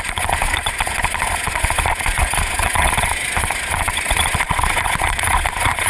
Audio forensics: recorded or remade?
remade